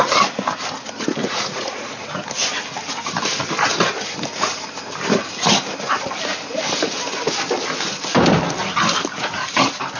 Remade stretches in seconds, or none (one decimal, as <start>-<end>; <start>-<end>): 1.2-2.1